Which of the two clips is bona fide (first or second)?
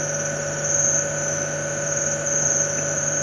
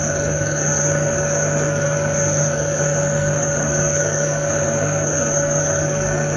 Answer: first